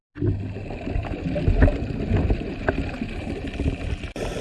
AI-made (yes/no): no